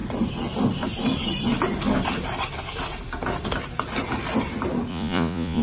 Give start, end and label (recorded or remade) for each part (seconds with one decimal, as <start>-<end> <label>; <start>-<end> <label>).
0.0-4.9 recorded; 4.9-5.6 remade

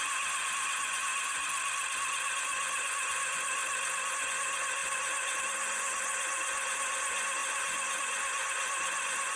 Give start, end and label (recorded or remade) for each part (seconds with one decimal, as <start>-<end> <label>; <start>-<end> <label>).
0.0-1.4 remade; 1.4-2.1 recorded; 2.1-3.6 remade; 3.6-4.1 recorded; 4.1-9.4 remade